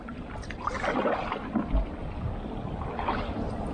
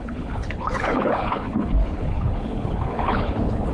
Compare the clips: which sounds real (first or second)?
first